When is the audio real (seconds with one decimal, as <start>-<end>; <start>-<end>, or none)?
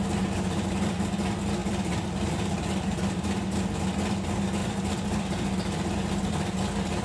0.0-1.6; 3.0-4.6; 6.3-7.0